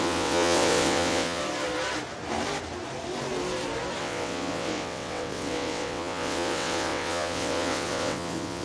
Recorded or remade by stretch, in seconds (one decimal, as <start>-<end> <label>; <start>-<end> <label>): 0.0-1.4 remade; 1.4-4.0 recorded; 4.0-8.6 remade